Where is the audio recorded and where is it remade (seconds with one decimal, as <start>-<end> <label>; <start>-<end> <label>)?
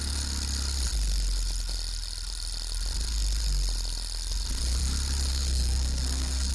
0.0-5.3 recorded; 5.3-6.5 remade